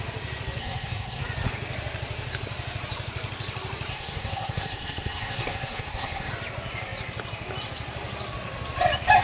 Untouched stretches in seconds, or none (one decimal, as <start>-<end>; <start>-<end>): 0.0-0.6; 1.2-3.9; 6.3-9.2